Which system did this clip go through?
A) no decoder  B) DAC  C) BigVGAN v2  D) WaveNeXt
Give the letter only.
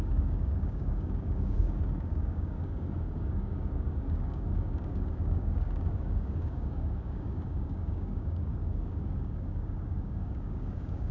B